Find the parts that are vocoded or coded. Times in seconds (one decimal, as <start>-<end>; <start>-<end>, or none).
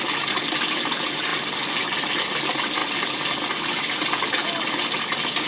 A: none